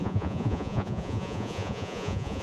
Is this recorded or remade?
remade